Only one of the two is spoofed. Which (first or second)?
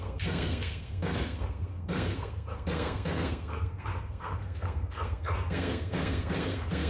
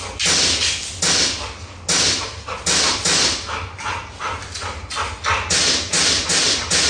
first